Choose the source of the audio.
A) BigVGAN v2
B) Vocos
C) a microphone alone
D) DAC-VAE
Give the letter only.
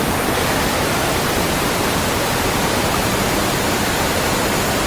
A